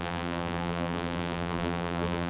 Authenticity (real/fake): fake